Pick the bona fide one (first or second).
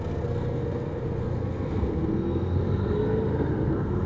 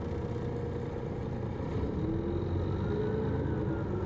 second